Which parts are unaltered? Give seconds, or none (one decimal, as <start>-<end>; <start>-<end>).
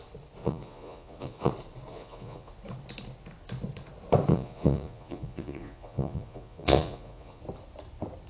0.0-0.4; 1.5-1.9; 2.5-4.3; 7.4-8.3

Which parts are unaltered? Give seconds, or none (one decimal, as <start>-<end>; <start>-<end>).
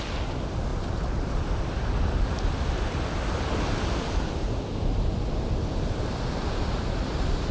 0.0-7.5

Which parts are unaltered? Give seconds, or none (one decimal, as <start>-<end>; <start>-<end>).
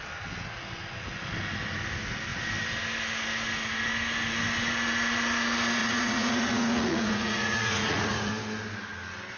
0.0-5.8; 8.3-9.4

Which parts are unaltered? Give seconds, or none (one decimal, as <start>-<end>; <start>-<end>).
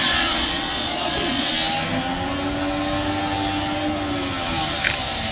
1.5-5.3